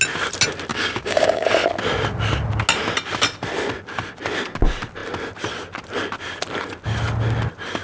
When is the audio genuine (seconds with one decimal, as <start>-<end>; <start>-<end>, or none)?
0.0-0.7; 1.5-7.8